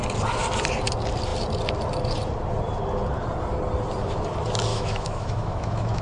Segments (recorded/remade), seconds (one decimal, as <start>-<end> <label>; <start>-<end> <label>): 0.0-4.7 recorded; 4.7-6.0 remade